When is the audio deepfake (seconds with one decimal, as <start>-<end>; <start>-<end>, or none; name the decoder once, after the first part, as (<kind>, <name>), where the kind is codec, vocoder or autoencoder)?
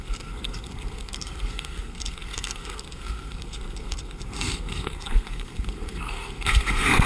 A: 0.0-7.1 (codec, SNAC)